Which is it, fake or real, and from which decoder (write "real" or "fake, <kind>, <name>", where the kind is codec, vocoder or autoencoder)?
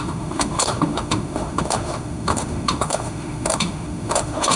fake, autoencoder, DAC-VAE